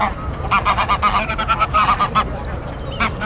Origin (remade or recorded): recorded